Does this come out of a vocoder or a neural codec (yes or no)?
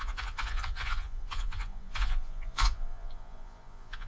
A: yes